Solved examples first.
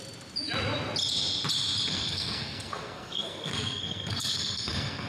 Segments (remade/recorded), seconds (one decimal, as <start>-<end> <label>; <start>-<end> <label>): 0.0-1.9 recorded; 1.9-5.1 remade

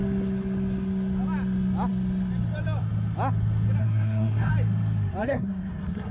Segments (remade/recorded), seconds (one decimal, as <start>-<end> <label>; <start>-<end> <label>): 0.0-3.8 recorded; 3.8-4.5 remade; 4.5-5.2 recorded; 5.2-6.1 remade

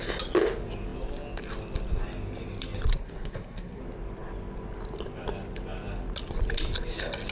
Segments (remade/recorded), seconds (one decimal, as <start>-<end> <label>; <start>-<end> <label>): 0.0-2.9 recorded; 2.9-3.8 remade; 3.8-7.3 recorded